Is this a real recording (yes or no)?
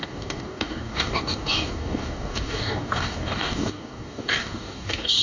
no